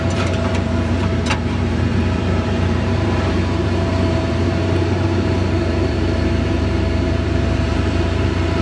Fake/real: fake